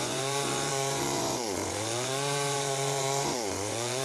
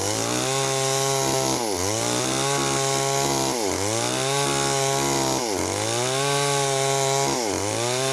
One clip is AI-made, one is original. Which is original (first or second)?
second